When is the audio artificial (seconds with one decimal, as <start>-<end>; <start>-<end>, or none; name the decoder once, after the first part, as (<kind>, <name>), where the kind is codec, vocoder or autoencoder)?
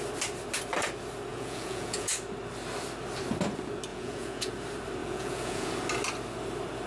1.3-2.1 (vocoder, Vocos); 3.9-4.5; 5.0-5.7